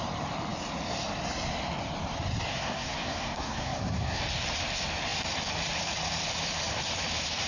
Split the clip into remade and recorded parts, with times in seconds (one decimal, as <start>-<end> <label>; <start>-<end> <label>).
0.0-2.5 recorded; 2.5-4.2 remade; 4.2-7.5 recorded